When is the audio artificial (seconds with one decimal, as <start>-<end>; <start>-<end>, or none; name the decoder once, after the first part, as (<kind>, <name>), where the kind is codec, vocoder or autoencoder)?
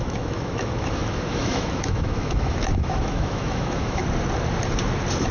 0.0-4.0 (autoencoder, DAC-VAE)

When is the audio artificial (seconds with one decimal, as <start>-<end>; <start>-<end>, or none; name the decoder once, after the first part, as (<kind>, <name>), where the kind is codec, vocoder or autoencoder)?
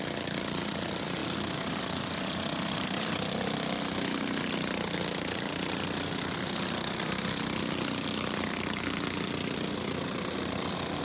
none